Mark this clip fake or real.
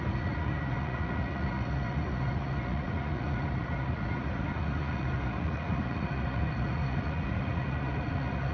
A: fake